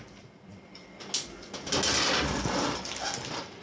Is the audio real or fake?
real